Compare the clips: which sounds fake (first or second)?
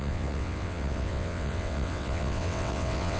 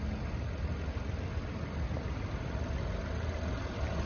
first